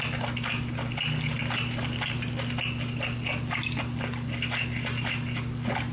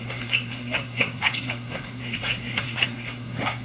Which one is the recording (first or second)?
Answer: first